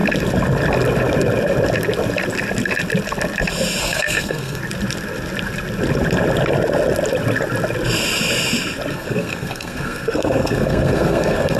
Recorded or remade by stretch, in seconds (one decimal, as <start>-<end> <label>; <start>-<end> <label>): 0.0-3.8 recorded; 3.8-4.6 remade; 4.6-8.9 recorded; 8.9-11.6 remade